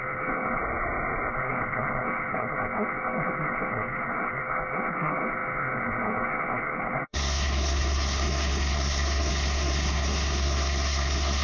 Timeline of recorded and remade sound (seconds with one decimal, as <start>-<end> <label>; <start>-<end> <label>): 0.0-0.6 remade; 0.6-1.3 recorded; 1.3-11.4 remade